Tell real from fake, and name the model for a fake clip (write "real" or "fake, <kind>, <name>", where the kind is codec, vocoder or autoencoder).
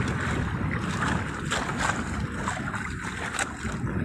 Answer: real